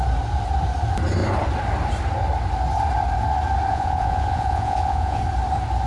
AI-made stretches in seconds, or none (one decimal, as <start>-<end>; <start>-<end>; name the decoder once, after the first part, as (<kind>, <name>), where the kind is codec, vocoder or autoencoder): 3.7-5.2 (vocoder, Vocos)